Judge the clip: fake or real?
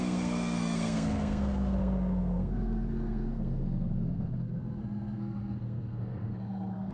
fake